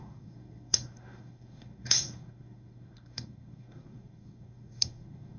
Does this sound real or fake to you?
fake